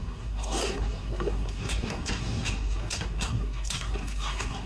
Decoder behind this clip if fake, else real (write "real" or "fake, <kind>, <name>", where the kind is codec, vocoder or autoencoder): fake, codec, SNAC